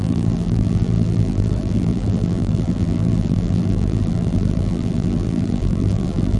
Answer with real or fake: fake